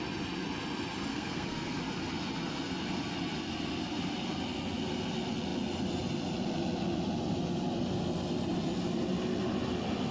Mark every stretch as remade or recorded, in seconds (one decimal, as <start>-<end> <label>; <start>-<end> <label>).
0.0-1.1 recorded; 1.1-1.8 remade; 1.8-10.1 recorded